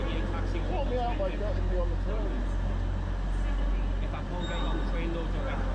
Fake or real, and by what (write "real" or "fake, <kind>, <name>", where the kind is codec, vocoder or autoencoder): real